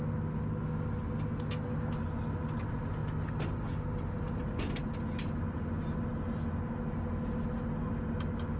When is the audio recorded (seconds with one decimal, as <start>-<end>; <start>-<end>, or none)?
0.0-8.6